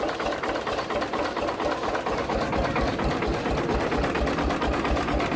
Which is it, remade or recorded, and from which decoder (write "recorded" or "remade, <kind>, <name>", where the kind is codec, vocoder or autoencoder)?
recorded